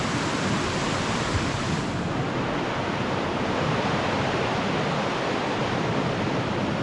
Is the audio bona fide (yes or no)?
no